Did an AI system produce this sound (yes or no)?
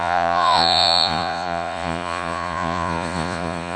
yes